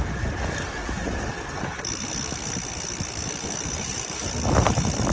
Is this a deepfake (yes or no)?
no